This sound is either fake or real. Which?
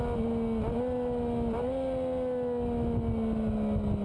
real